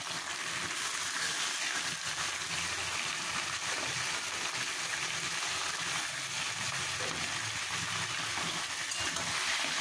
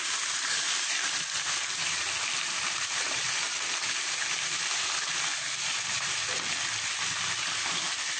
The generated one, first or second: second